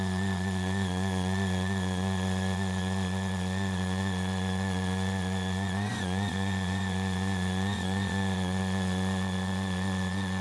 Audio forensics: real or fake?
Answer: fake